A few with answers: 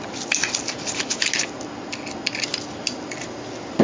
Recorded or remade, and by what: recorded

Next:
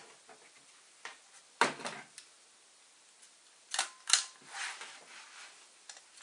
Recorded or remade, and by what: recorded